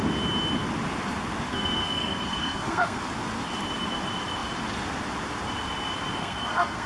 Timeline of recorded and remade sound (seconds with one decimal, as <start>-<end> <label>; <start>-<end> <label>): 0.0-1.5 recorded; 1.5-3.0 remade; 3.0-6.2 recorded; 6.2-6.9 remade